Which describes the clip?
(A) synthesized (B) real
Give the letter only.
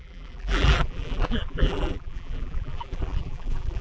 A